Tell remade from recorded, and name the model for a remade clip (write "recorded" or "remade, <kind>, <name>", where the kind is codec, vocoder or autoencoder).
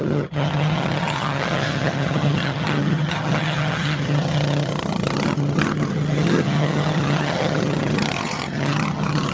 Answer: remade, vocoder, HiFi-GAN